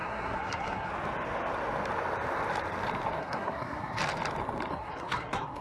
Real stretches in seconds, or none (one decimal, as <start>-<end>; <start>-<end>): 0.9-3.2; 4.0-4.7